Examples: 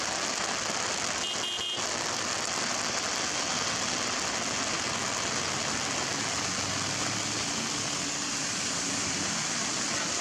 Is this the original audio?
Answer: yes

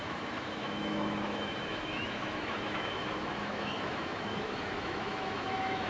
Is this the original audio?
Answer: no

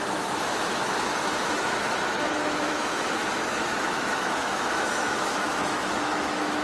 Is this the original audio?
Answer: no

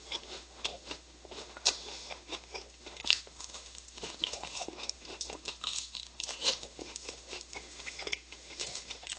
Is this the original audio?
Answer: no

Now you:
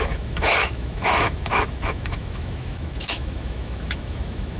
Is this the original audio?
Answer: no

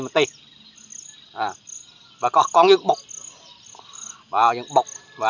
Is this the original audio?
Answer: yes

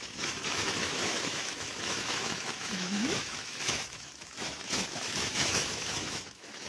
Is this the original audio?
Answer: no